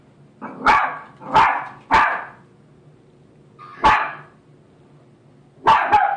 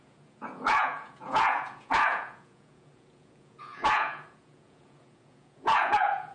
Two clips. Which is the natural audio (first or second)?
first